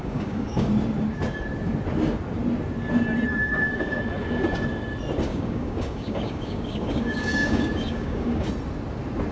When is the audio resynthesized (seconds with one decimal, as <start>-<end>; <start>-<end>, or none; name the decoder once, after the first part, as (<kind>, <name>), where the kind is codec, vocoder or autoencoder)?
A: 0.0-0.7 (codec, DAC); 3.4-4.0; 5.3-8.5